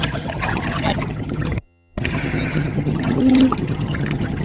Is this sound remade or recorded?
remade